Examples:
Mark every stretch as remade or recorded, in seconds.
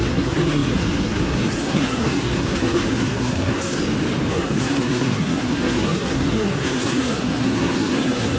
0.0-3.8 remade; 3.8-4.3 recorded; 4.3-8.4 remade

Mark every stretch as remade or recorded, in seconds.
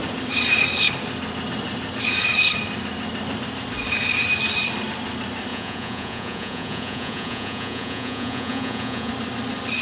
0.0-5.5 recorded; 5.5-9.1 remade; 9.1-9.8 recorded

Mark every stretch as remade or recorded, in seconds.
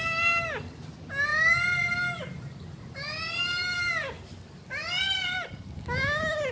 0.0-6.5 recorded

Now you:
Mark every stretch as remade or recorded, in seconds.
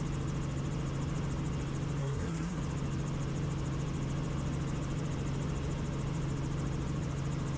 0.0-2.0 recorded; 2.0-2.6 remade; 2.6-7.6 recorded